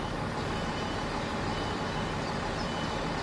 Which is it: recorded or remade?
recorded